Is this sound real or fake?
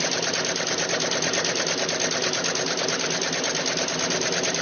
real